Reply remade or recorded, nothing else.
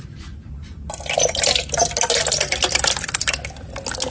recorded